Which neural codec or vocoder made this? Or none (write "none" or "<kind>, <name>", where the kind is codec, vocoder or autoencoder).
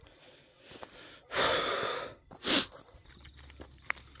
none